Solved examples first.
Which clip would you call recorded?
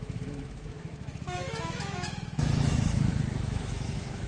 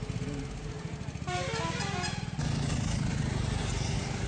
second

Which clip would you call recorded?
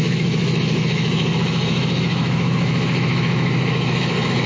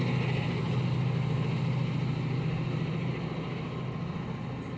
second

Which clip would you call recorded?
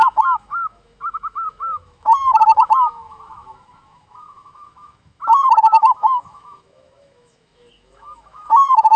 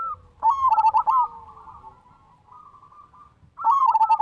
second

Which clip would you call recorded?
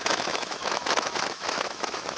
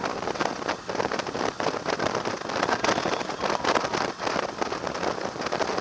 second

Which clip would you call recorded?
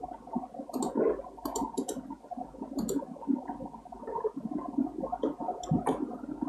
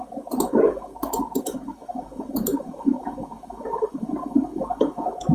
first